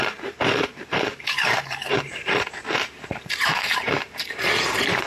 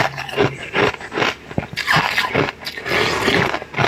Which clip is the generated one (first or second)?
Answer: first